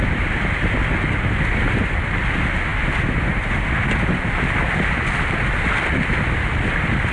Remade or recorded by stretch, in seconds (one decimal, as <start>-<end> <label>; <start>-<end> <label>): 0.0-7.1 recorded